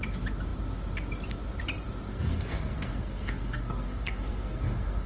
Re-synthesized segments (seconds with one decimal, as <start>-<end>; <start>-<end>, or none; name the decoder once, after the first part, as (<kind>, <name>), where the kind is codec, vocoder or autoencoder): 2.1-5.1 (codec, SNAC)